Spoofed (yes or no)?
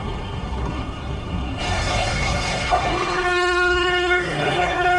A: yes